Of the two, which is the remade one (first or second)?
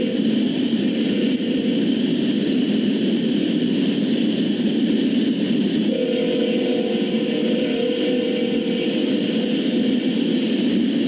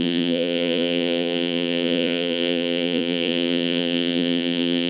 second